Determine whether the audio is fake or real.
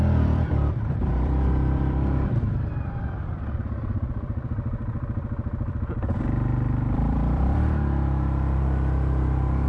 fake